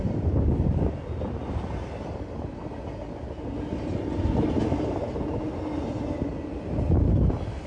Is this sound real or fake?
real